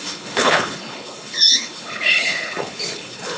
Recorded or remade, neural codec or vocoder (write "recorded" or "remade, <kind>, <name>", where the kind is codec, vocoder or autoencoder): remade, codec, HILCodec